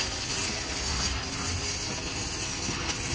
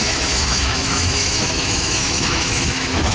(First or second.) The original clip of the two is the first